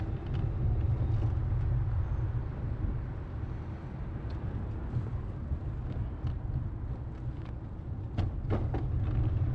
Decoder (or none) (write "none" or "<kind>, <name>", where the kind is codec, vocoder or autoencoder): none